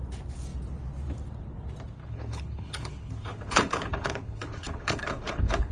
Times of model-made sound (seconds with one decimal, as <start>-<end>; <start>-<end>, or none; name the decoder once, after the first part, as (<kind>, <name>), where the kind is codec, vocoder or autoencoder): 2.0-5.7 (codec, HILCodec)